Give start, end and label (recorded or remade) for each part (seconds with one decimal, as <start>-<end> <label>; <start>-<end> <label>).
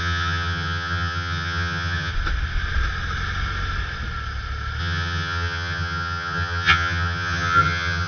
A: 0.0-2.1 remade; 2.1-4.8 recorded; 4.8-8.1 remade